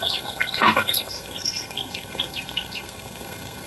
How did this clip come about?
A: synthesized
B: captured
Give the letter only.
A